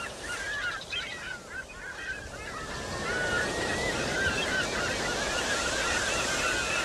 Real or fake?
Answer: fake